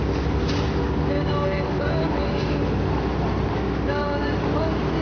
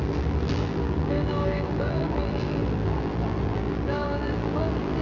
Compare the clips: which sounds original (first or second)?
first